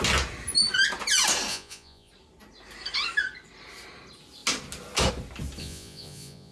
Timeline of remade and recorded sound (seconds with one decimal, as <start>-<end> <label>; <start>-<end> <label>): 0.0-1.5 recorded; 1.5-2.1 remade; 2.1-5.6 recorded; 5.6-6.5 remade